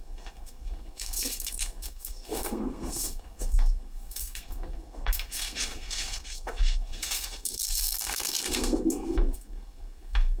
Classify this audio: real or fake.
fake